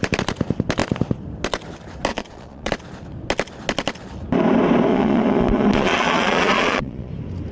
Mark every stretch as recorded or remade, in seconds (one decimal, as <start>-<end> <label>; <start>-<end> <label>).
0.0-2.1 recorded; 2.1-2.7 remade; 2.7-4.9 recorded; 4.9-7.1 remade; 7.1-7.5 recorded